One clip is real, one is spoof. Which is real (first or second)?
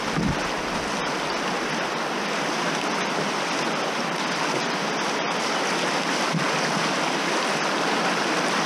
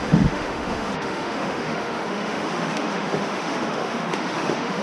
first